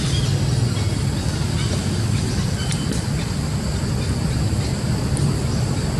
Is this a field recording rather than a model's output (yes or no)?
yes